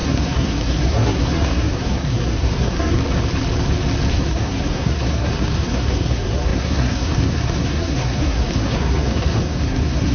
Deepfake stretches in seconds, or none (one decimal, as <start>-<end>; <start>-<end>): 0.0-3.0; 4.1-10.1